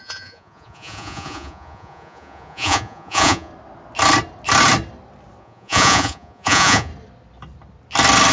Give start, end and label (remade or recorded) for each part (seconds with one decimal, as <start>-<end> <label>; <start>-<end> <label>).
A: 0.0-3.5 remade; 3.5-5.4 recorded; 5.4-6.9 remade; 6.9-8.3 recorded

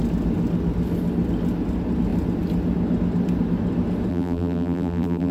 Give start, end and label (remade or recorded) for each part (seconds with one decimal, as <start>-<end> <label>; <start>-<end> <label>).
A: 0.0-4.1 recorded; 4.1-5.3 remade

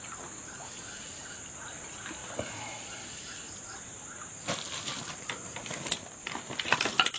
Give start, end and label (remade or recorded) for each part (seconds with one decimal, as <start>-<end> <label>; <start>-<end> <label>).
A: 0.0-7.2 recorded

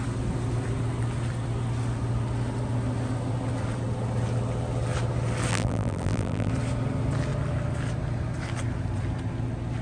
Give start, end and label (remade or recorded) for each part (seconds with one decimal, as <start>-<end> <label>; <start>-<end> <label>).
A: 0.0-5.5 recorded; 5.5-6.5 remade; 6.5-9.8 recorded

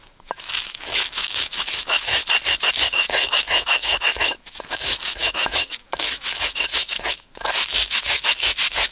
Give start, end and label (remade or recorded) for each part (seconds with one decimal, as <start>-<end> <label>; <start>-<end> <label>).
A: 0.0-2.2 remade; 2.2-2.7 recorded; 2.7-8.9 remade

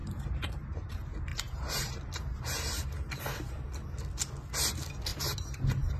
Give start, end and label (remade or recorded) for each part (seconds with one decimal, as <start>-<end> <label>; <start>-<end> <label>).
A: 0.0-0.9 remade; 0.9-1.3 recorded; 1.3-3.2 remade; 3.2-5.1 recorded; 5.1-6.0 remade